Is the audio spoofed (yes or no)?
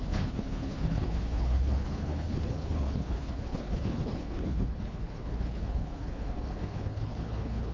yes